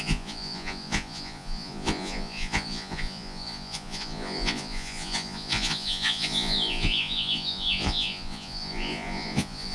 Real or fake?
fake